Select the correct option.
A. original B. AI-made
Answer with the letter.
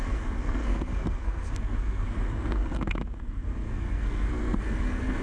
B